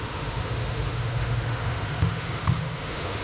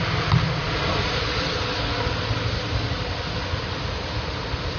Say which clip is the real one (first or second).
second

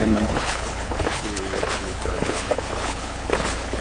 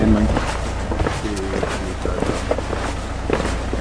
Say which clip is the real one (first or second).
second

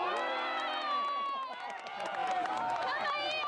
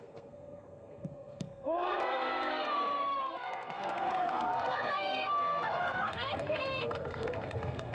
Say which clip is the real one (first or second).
first